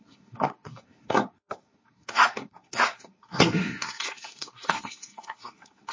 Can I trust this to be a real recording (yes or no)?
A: no